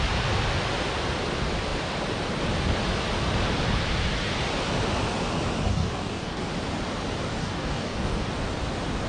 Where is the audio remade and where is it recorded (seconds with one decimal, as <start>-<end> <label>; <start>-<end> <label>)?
0.0-5.7 recorded; 5.7-6.4 remade; 6.4-7.4 recorded; 7.4-8.3 remade; 8.3-9.1 recorded